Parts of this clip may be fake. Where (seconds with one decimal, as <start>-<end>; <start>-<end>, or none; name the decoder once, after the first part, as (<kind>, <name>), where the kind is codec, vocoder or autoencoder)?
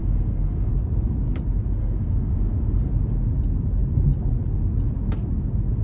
0.0-0.7 (codec, SNAC); 1.8-2.9